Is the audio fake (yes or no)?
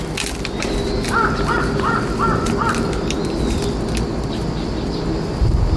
no